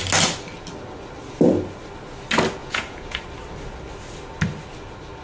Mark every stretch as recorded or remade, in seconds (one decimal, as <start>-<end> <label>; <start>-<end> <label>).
0.0-2.6 recorded; 2.6-3.2 remade; 3.2-5.2 recorded